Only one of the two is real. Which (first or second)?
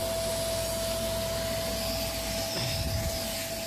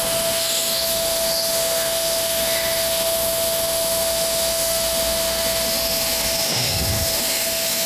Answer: first